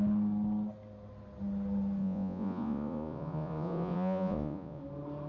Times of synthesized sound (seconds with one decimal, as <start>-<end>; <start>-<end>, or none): 2.0-4.8